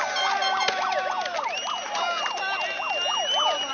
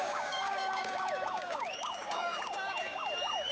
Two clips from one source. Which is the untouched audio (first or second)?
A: first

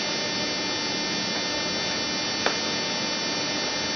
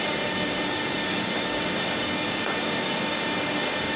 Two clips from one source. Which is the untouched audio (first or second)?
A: first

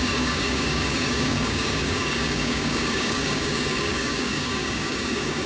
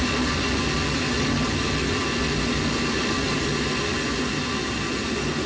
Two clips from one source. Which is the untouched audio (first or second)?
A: second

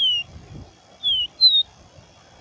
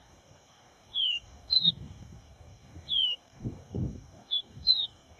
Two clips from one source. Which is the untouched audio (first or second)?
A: first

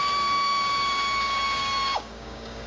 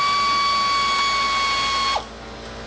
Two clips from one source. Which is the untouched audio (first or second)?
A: second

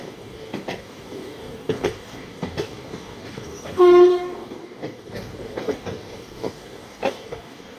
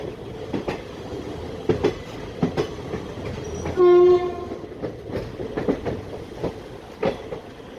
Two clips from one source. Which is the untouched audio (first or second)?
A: second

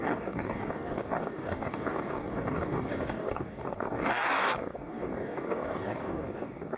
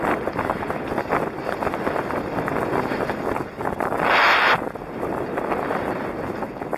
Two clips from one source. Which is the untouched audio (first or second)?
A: second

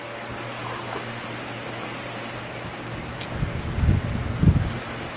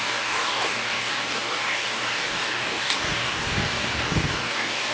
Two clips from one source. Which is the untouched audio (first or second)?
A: first